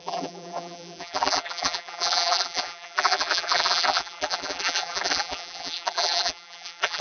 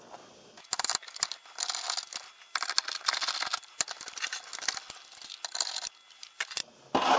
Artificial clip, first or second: first